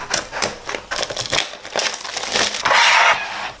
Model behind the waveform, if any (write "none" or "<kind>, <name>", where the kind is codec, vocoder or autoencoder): none